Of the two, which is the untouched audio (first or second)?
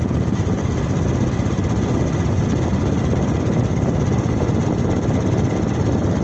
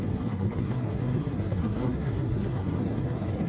first